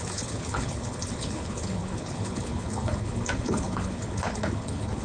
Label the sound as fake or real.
fake